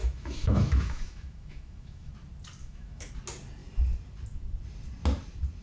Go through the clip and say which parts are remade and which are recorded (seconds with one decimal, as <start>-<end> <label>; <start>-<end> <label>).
0.0-2.1 remade; 2.1-2.6 recorded; 2.6-3.1 remade; 3.1-5.6 recorded